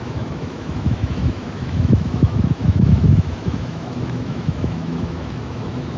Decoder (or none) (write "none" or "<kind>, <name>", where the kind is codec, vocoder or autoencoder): autoencoder, DAC-VAE